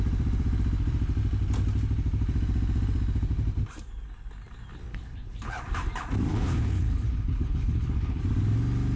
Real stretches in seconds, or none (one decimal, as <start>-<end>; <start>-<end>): 0.0-4.9; 5.6-6.3; 8.2-9.0